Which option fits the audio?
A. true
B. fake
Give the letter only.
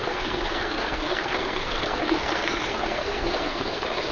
B